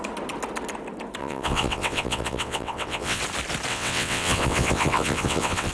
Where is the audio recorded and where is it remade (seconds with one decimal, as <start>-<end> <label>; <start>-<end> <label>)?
0.0-1.2 recorded; 1.2-3.2 remade; 3.2-3.7 recorded; 3.7-5.7 remade